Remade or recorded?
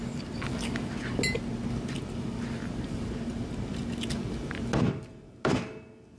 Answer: recorded